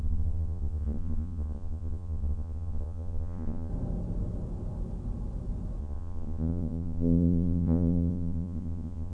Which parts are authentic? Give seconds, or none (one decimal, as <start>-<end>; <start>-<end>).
3.7-5.8